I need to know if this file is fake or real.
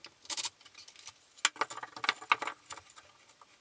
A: real